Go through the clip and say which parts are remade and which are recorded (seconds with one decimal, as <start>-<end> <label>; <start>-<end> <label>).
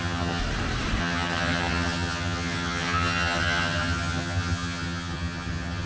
0.0-0.4 remade; 0.4-1.0 recorded; 1.0-5.9 remade